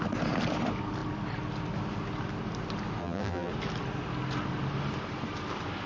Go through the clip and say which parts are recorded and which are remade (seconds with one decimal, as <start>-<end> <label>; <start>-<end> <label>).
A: 0.0-3.0 recorded; 3.0-3.5 remade; 3.5-5.9 recorded